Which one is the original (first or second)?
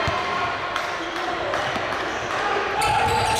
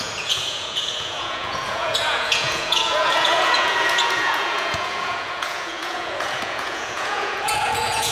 first